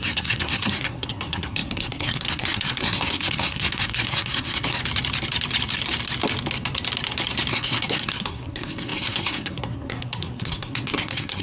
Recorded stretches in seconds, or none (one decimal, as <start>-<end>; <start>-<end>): 4.8-7.5